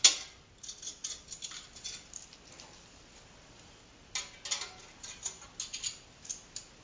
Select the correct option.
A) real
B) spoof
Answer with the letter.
A